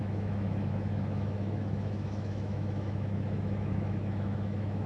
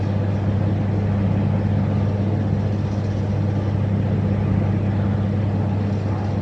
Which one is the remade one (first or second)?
first